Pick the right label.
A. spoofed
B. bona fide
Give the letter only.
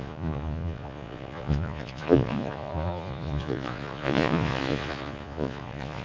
A